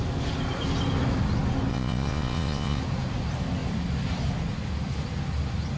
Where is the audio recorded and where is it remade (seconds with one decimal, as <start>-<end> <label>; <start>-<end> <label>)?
0.0-1.7 recorded; 1.7-2.8 remade; 2.8-5.8 recorded